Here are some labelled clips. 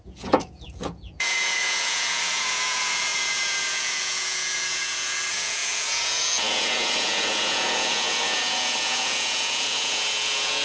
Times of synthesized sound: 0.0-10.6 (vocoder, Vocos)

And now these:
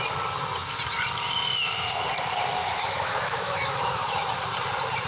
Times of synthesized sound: 2.6-4.3 (autoencoder, DAC-VAE)

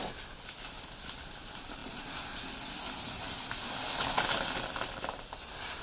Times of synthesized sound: none

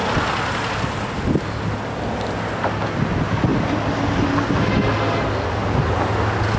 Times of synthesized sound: none

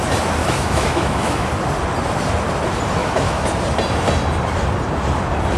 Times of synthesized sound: 0.4-1.5 (autoencoder, DAC-VAE); 3.0-3.5